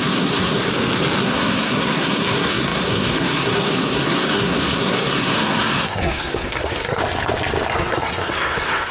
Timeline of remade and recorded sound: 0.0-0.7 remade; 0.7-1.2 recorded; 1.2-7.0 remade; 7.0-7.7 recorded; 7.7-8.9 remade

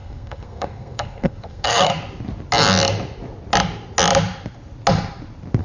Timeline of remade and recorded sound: 0.0-1.9 remade; 1.9-5.6 recorded

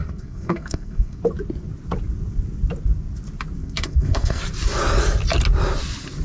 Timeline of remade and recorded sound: 0.0-1.2 remade; 1.2-3.6 recorded; 3.6-4.4 remade; 4.4-6.2 recorded

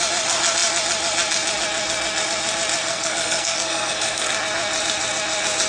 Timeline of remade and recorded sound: 0.0-2.8 recorded; 2.8-4.3 remade; 4.3-5.7 recorded

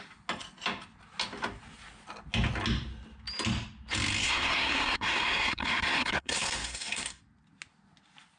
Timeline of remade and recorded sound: 0.0-4.2 recorded; 4.2-7.2 remade; 7.2-8.4 recorded

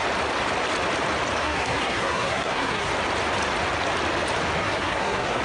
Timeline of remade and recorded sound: 0.0-1.4 recorded; 1.4-2.9 remade; 2.9-4.6 recorded; 4.6-5.4 remade

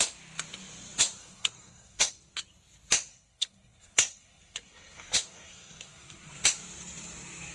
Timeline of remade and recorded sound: 0.0-1.2 recorded; 1.2-2.1 remade; 2.1-3.1 recorded; 3.1-6.3 remade; 6.3-7.5 recorded